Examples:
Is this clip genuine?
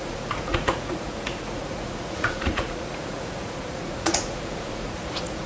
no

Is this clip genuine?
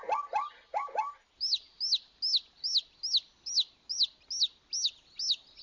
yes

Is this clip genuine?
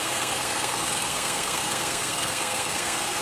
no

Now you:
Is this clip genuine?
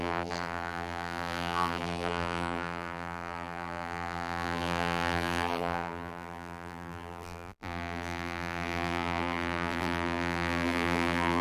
no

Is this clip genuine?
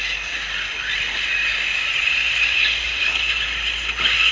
yes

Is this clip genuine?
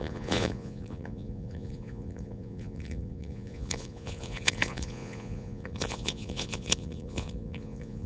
no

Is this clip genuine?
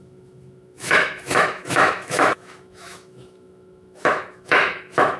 no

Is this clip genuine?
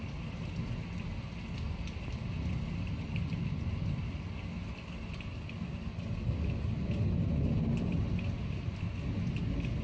yes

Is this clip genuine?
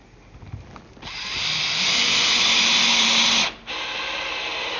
yes